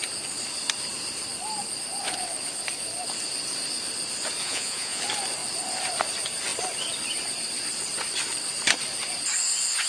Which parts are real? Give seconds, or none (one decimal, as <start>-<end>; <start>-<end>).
0.0-4.4; 5.0-9.9

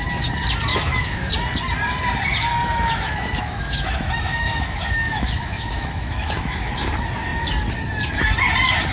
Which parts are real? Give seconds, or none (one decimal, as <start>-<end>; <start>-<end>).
0.0-0.7; 1.3-2.5; 6.7-8.9

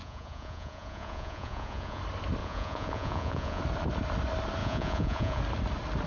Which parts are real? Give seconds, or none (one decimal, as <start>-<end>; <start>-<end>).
2.0-2.4; 3.6-4.6; 5.4-6.1

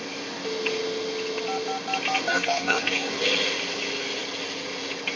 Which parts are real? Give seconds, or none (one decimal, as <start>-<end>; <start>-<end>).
0.0-2.3; 3.1-5.2

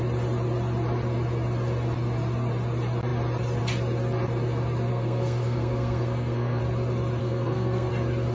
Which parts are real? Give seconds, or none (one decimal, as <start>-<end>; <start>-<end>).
0.0-4.9; 6.6-7.2; 7.9-8.3

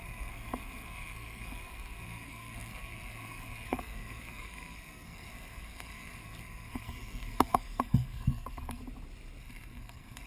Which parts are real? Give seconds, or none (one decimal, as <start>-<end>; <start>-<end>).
8.8-9.4